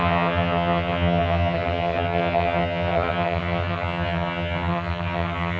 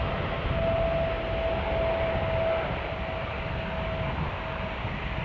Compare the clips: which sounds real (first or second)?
second